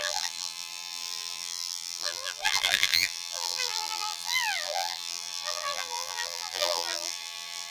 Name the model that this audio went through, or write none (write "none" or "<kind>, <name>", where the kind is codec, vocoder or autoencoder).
vocoder, BigVGAN v2